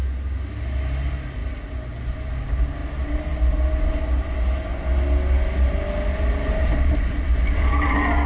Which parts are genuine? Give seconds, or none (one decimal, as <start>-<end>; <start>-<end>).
0.0-8.3